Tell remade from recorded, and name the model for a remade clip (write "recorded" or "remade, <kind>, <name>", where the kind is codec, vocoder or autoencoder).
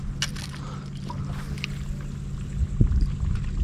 recorded